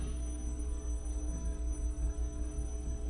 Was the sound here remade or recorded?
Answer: remade